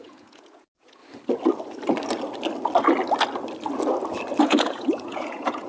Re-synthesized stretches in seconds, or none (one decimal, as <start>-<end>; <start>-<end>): 0.0-1.0; 4.4-5.7